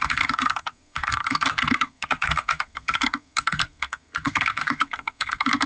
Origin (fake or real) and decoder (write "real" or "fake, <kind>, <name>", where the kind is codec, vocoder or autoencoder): fake, codec, SNAC